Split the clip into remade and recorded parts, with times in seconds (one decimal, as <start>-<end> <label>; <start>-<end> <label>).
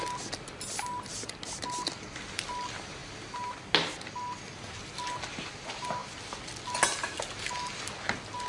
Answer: 0.0-8.5 recorded